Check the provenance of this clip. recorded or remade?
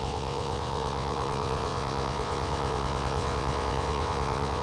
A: remade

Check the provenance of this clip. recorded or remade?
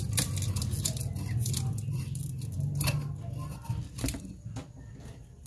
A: recorded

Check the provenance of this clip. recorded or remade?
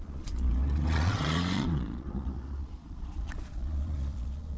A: remade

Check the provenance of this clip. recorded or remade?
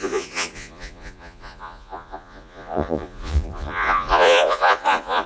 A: remade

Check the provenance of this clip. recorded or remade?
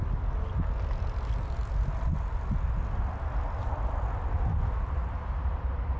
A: recorded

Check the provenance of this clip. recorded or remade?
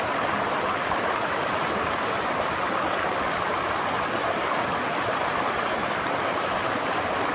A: recorded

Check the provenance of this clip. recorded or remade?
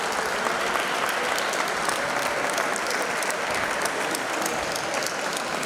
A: recorded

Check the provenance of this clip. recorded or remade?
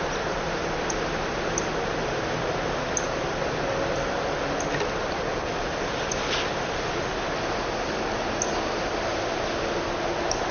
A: recorded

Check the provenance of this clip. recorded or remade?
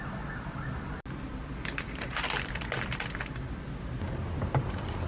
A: recorded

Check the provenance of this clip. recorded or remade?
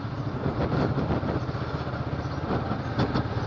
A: recorded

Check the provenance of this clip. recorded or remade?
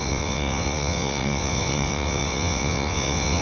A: remade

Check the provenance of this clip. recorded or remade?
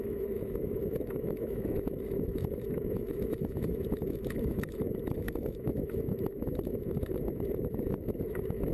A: remade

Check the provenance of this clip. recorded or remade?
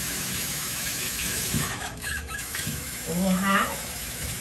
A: remade